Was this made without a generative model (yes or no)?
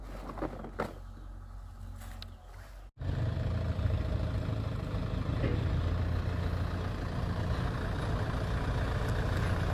yes